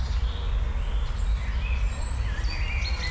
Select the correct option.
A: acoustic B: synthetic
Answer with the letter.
A